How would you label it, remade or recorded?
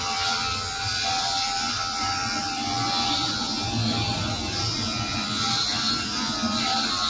remade